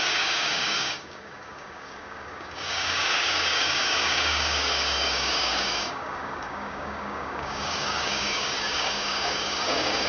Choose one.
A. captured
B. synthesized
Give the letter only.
B